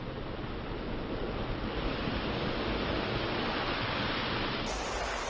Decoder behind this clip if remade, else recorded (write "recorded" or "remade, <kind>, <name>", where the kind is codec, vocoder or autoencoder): recorded